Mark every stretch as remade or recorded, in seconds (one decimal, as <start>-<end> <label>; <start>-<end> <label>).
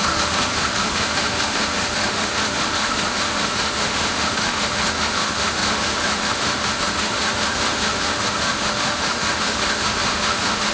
0.0-10.7 remade